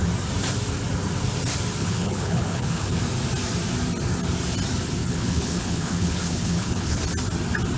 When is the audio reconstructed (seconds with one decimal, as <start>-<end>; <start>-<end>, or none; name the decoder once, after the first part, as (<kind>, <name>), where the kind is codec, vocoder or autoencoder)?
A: 1.8-3.0 (codec, HILCodec); 5.0-7.0